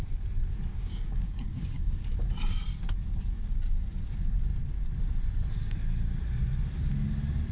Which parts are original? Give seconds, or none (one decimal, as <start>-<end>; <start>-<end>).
0.0-0.7; 1.9-7.5